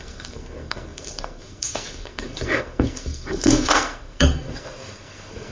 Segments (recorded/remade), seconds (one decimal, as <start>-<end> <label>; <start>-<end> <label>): 0.0-5.5 remade